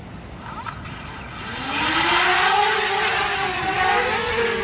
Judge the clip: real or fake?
real